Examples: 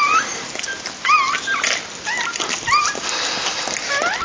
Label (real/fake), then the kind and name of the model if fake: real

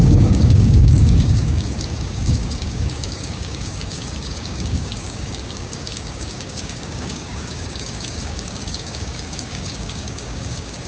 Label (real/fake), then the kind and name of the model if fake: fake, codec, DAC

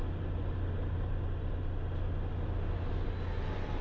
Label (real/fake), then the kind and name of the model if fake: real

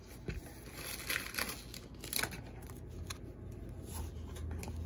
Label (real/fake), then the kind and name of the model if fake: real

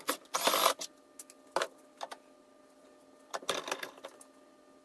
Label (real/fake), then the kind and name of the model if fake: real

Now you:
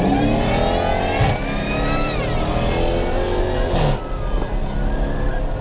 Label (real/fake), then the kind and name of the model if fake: real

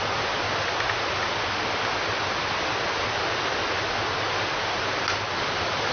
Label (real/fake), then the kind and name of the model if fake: real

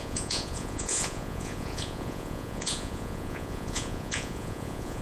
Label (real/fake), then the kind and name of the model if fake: fake, vocoder, Vocos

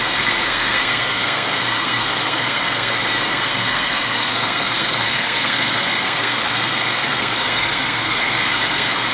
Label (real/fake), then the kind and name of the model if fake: fake, codec, SNAC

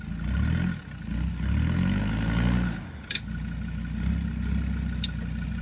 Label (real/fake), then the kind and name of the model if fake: real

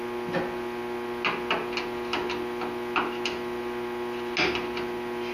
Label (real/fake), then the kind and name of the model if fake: real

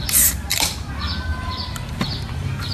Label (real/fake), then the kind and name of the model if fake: fake, vocoder, BigVGAN v2